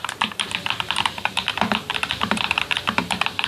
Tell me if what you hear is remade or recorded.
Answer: remade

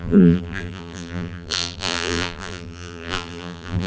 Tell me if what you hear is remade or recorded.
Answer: remade